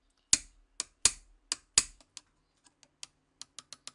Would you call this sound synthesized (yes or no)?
no